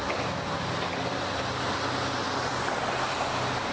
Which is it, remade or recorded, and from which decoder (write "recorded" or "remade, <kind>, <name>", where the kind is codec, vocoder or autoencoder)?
recorded